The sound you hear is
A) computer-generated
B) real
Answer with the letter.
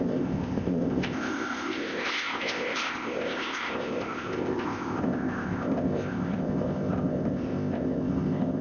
A